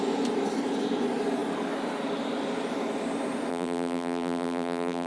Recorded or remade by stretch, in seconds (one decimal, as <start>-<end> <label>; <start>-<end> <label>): 0.0-3.5 recorded; 3.5-5.1 remade